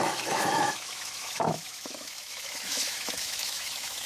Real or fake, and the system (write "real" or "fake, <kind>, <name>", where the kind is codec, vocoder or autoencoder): fake, autoencoder, DAC-VAE